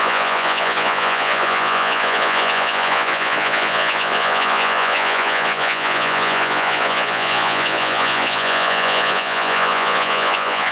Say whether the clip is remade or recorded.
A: remade